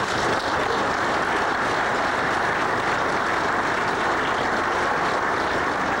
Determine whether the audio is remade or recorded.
remade